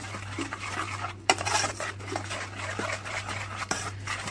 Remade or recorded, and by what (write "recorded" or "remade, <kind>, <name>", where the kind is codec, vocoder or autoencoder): remade, vocoder, BigVGAN v2